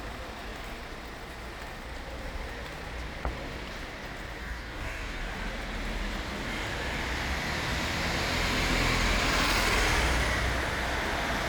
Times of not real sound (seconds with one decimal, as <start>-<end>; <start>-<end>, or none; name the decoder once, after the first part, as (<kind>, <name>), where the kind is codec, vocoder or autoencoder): 4.4-5.2 (codec, DAC)